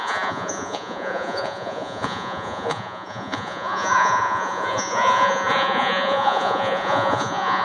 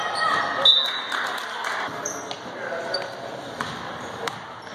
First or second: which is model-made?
first